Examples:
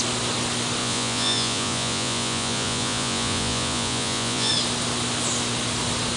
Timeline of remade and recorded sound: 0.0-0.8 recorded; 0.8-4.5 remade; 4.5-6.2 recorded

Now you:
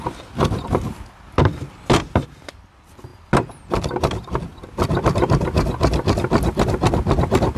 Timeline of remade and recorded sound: 0.0-7.6 recorded

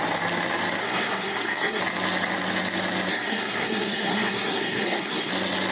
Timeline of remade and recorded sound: 0.0-0.8 recorded; 0.8-1.8 remade; 1.8-3.1 recorded; 3.1-5.3 remade; 5.3-5.7 recorded